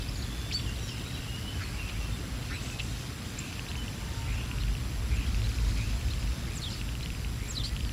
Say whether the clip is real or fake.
real